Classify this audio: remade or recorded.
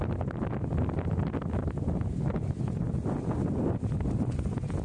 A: recorded